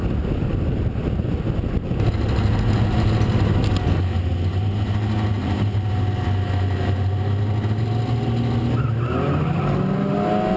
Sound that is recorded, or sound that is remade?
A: recorded